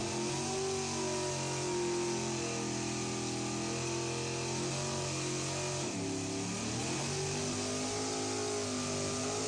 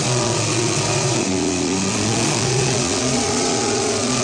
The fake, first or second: second